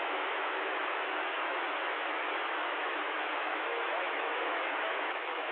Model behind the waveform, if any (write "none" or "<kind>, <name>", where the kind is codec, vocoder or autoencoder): autoencoder, DAC-VAE